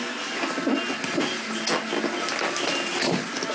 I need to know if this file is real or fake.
real